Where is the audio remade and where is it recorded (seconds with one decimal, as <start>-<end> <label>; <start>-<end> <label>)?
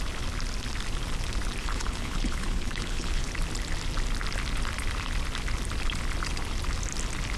0.0-1.6 recorded; 1.6-3.3 remade; 3.3-7.4 recorded